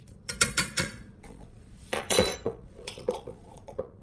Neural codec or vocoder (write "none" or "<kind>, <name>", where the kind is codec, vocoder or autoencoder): vocoder, Vocos